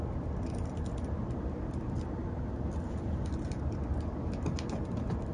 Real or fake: real